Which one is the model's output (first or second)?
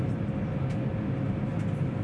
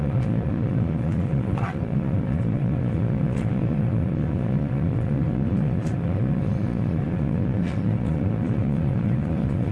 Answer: second